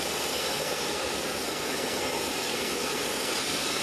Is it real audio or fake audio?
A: fake